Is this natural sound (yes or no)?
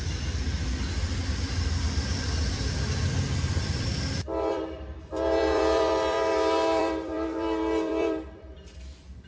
no